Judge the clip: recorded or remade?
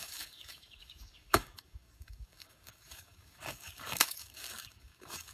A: remade